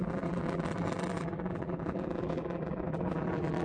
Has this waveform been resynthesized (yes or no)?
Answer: yes